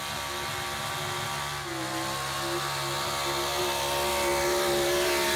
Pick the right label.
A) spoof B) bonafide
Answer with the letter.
B